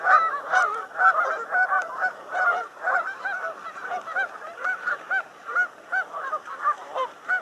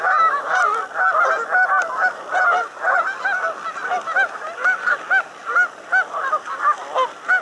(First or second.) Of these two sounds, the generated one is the first